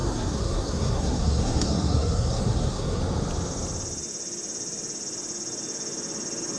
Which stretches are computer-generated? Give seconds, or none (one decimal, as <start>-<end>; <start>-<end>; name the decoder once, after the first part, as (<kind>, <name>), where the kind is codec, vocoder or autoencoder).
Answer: 0.0-3.0 (codec, SNAC)